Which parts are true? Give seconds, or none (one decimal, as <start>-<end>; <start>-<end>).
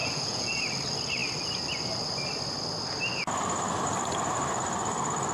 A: 0.6-5.3